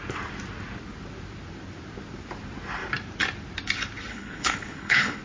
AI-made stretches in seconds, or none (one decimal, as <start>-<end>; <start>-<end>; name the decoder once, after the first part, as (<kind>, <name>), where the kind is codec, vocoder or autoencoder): 4.1-5.2 (codec, HILCodec)